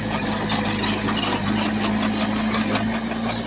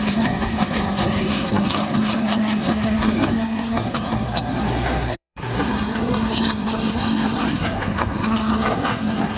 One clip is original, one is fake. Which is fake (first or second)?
second